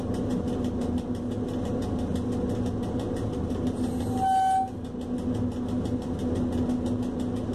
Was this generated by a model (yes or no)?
no